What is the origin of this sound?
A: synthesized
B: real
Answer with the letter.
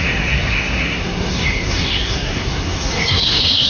A